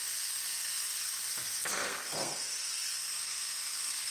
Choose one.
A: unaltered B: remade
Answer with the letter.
B